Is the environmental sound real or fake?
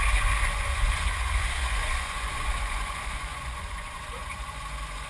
fake